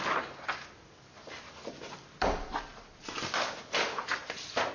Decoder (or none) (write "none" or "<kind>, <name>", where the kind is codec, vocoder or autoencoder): none